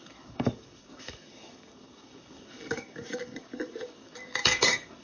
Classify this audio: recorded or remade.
remade